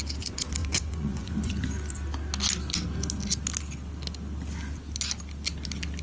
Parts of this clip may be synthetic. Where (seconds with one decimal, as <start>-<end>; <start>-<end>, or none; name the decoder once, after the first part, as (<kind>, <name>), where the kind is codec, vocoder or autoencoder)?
0.6-1.5 (vocoder, Vocos)

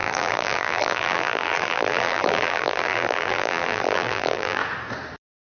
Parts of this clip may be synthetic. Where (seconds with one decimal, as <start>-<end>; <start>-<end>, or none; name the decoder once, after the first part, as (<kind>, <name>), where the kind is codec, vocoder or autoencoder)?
0.0-4.6 (vocoder, BigVGAN v2)